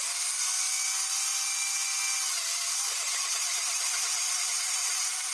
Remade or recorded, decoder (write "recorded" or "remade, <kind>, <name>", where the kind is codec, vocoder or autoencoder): recorded